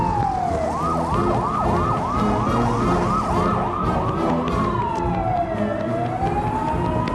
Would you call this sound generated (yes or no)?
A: no